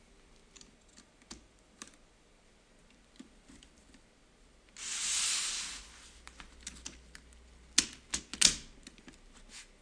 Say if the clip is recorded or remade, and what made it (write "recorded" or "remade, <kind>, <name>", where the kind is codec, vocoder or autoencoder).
recorded